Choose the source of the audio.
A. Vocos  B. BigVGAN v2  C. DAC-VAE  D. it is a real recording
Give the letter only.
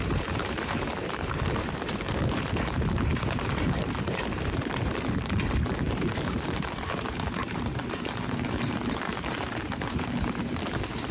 B